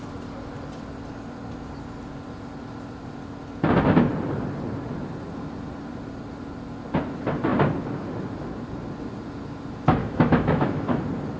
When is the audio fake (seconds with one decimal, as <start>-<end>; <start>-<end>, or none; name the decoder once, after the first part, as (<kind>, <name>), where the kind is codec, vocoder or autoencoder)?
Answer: 10.0-11.0 (autoencoder, DAC-VAE)